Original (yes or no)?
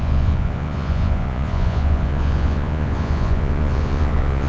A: no